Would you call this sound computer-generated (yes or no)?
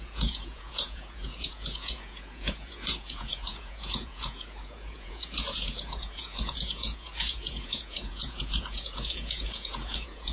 yes